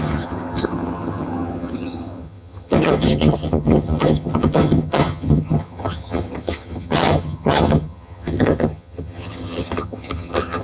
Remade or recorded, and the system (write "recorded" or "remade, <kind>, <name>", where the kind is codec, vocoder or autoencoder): remade, vocoder, HiFi-GAN